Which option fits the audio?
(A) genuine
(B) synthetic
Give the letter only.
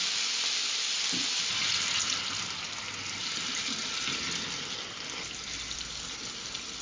A